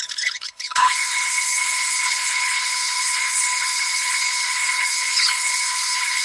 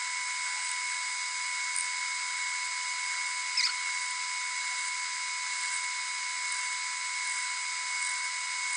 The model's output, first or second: first